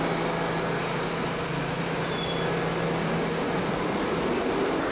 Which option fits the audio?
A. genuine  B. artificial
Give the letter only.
A